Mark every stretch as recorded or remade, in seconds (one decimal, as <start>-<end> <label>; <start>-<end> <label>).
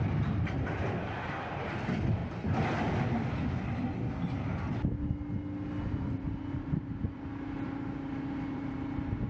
0.0-2.2 remade; 2.2-6.5 recorded; 6.5-9.3 remade